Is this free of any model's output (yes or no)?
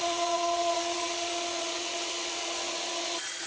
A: no